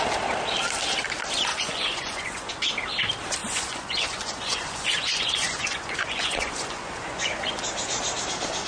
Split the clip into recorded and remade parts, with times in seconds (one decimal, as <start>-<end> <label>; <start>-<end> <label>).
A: 0.0-1.5 recorded; 1.5-2.5 remade; 2.5-3.4 recorded; 3.4-7.6 remade; 7.6-8.7 recorded